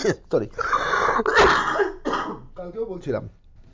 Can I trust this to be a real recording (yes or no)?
yes